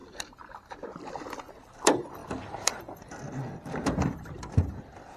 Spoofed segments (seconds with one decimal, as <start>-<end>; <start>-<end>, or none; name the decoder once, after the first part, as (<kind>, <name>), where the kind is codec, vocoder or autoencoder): 1.7-5.2 (vocoder, BigVGAN v2)